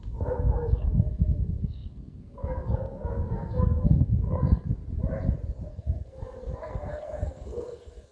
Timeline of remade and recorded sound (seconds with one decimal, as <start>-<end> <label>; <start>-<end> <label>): 0.0-4.8 remade; 4.8-5.7 recorded; 5.7-8.1 remade